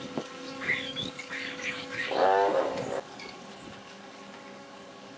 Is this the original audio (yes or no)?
no